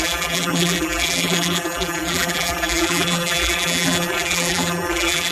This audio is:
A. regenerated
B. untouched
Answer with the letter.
A